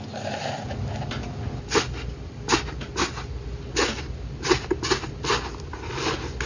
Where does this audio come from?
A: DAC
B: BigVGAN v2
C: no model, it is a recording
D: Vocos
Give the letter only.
C